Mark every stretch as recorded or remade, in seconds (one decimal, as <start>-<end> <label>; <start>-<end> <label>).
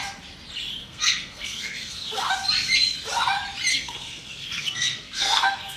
0.0-0.8 recorded; 0.8-2.3 remade; 2.3-3.7 recorded; 3.7-5.8 remade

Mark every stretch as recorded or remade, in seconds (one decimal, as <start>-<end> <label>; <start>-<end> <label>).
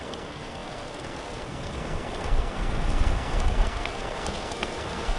0.0-5.2 remade